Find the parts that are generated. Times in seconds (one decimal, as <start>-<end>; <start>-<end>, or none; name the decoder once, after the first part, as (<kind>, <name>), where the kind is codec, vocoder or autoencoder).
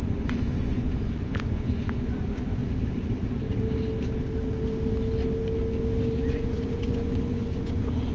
0.0-2.6 (vocoder, Vocos); 6.3-8.1